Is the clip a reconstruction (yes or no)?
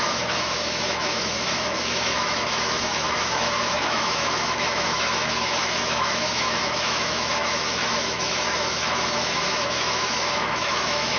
yes